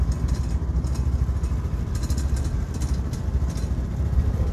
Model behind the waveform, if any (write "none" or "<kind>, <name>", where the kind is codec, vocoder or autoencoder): none